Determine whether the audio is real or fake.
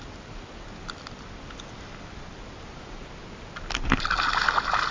real